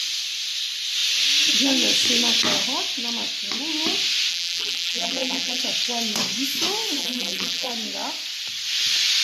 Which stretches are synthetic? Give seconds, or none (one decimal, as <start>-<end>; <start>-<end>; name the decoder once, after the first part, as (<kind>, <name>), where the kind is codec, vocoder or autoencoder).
4.3-5.6 (vocoder, BigVGAN v2); 7.0-7.7